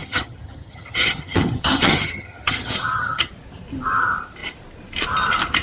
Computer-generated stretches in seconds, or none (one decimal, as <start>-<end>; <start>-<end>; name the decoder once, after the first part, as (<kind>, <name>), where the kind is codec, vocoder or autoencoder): 0.0-3.3 (vocoder, HiFi-GAN)